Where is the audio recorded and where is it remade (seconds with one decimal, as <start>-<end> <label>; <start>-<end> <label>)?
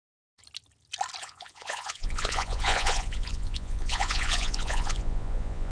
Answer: 0.0-0.4 remade; 0.4-1.2 recorded; 1.2-5.7 remade